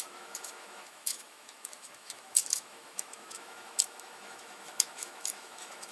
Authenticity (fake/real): fake